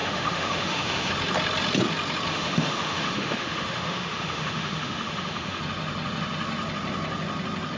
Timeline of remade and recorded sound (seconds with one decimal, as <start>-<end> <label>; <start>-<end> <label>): 0.0-1.1 remade; 1.1-2.3 recorded; 2.3-5.6 remade; 5.6-7.8 recorded